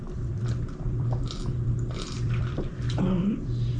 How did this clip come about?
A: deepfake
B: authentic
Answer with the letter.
A